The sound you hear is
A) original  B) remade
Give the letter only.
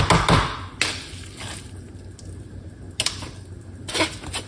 A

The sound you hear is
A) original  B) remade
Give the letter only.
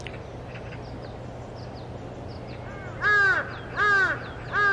A